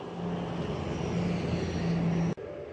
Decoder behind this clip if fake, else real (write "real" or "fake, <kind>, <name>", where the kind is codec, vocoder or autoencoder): real